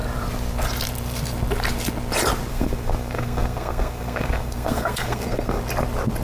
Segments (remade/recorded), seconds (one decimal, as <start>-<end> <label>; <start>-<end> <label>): 0.0-2.5 recorded; 2.5-5.6 remade; 5.6-6.2 recorded